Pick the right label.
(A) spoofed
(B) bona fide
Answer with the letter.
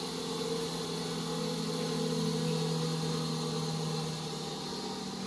B